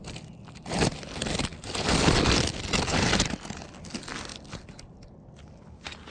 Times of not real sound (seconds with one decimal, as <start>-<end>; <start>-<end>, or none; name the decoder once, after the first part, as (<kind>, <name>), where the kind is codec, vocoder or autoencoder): none